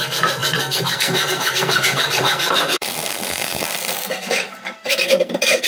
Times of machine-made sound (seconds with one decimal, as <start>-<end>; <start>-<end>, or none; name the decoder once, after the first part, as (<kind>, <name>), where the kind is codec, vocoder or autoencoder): 0.0-5.7 (codec, SNAC)